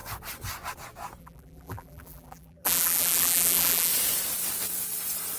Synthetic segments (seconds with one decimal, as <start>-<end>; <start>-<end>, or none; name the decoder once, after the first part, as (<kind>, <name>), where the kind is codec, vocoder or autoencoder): 1.2-3.9 (vocoder, BigVGAN v2)